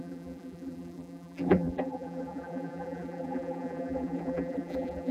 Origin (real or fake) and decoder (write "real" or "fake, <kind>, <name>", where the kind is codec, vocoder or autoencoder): fake, vocoder, BigVGAN v2